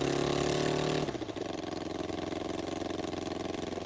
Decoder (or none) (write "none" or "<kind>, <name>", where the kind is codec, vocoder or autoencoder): none